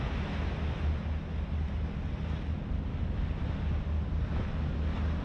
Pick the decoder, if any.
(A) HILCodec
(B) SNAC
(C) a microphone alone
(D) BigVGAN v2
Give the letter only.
C